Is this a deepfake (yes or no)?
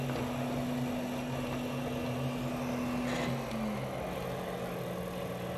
no